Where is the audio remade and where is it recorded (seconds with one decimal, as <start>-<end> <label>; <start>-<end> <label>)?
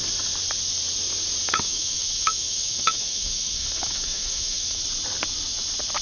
0.0-1.4 recorded; 1.4-4.8 remade; 4.8-6.0 recorded